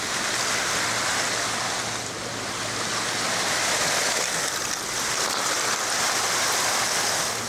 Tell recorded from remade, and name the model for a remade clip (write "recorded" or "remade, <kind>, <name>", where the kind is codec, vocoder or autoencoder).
recorded